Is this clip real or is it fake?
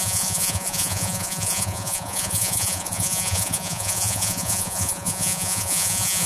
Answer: fake